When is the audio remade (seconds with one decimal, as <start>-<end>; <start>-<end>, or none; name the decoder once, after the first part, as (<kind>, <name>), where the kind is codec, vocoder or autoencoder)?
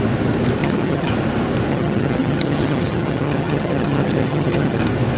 0.6-1.1 (vocoder, HiFi-GAN); 1.7-4.8